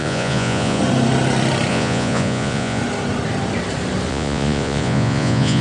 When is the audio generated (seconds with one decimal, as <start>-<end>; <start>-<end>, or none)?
0.0-0.8; 1.7-2.8; 4.1-5.6